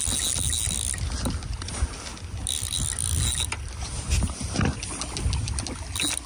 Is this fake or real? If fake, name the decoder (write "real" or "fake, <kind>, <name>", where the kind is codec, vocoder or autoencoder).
real